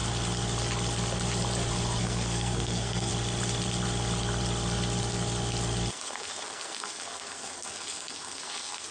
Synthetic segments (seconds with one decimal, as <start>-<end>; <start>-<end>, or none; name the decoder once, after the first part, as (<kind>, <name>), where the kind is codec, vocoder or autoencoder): 2.0-3.1 (codec, SNAC); 5.9-8.9

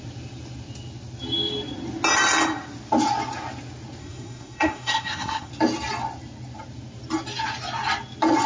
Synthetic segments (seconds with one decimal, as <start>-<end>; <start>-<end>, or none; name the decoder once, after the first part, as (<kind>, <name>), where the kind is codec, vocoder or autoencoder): 4.0-5.5 (codec, SNAC)

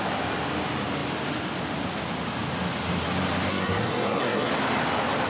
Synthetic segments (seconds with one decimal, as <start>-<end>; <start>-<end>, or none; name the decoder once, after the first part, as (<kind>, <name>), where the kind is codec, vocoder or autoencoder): 3.5-4.5 (codec, SNAC)

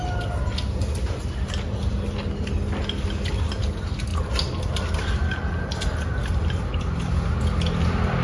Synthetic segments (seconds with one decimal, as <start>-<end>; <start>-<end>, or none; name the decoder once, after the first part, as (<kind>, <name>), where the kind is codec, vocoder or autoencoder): none

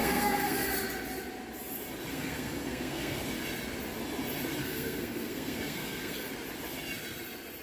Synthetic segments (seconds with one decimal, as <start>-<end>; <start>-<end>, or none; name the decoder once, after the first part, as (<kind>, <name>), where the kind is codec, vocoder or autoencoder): 0.0-0.7 (codec, SNAC); 2.1-3.2; 4.6-6.3

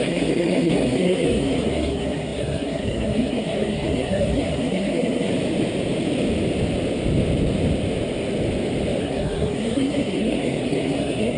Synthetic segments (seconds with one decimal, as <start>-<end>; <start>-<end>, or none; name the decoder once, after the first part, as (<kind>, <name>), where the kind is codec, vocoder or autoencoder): 0.0-5.3 (codec, SNAC); 9.0-11.4

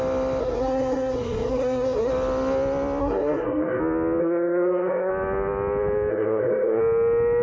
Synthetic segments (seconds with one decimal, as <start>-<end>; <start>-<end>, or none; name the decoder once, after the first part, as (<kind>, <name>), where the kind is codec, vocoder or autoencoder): 0.4-2.1 (codec, SNAC); 3.0-3.8; 4.2-5.1; 6.1-6.8